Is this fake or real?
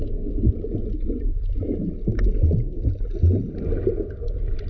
real